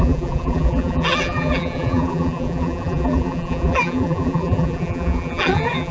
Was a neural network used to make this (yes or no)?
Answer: yes